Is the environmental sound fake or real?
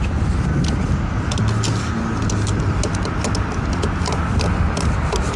real